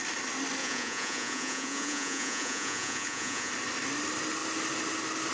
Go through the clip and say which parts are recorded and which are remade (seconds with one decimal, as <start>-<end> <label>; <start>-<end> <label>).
0.0-0.6 recorded; 0.6-3.5 remade; 3.5-5.3 recorded